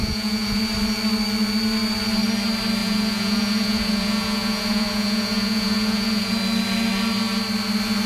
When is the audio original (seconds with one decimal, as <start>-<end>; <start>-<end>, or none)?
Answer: 0.6-2.8; 6.3-8.1